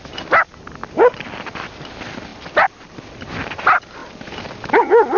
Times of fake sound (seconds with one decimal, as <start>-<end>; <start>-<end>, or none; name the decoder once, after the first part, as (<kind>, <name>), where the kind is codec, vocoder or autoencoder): none